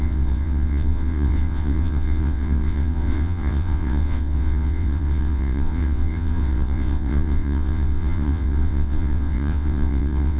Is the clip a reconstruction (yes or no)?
yes